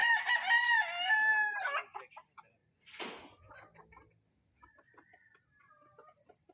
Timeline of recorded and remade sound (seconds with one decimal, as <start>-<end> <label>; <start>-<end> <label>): 0.0-2.6 recorded; 2.6-3.5 remade; 3.5-6.5 recorded